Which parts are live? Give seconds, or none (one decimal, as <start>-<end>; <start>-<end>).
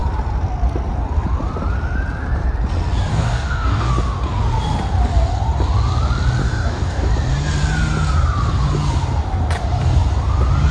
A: 0.0-3.1; 3.9-6.4; 7.1-10.7